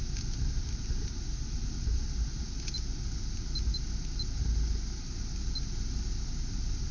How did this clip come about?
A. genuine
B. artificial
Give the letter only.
A